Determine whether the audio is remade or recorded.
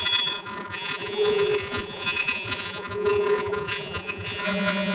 remade